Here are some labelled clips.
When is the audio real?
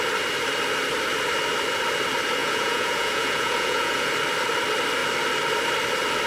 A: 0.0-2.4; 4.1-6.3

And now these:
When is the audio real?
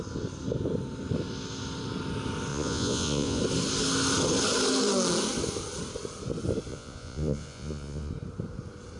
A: 0.0-2.5; 3.4-6.7; 8.1-9.0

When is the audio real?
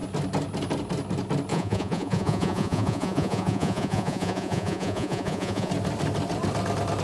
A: 0.0-1.5; 5.7-7.0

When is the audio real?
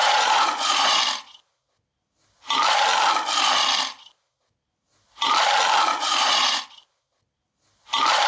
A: 1.0-5.9; 6.6-8.3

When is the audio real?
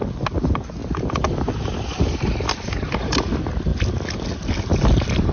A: 0.0-5.3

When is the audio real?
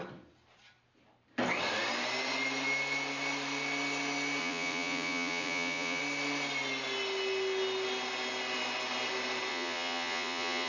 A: 0.0-4.4; 6.0-9.5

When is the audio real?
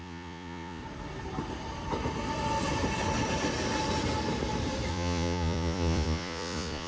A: 0.8-4.9